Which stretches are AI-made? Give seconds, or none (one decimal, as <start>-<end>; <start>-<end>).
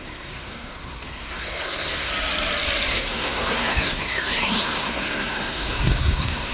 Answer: 0.0-2.1; 2.9-6.5